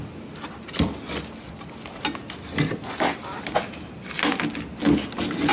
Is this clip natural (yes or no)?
yes